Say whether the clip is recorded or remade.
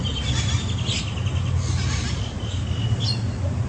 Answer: recorded